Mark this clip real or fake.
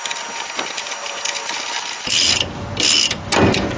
real